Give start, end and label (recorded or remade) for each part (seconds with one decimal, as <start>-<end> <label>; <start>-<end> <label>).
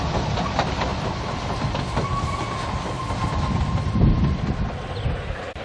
0.0-5.6 recorded